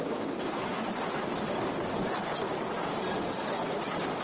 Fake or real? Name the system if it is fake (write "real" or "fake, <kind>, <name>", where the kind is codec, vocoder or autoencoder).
real